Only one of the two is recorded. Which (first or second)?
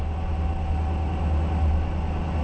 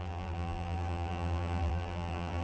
first